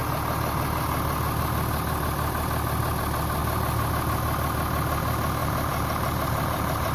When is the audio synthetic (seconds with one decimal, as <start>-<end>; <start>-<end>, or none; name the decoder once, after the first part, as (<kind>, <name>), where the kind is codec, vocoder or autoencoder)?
5.4-6.9 (vocoder, BigVGAN v2)